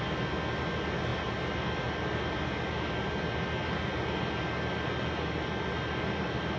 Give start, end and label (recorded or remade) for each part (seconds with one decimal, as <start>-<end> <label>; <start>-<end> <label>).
0.0-6.6 recorded